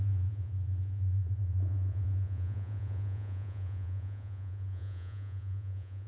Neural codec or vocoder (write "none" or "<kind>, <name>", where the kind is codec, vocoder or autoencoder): vocoder, Vocos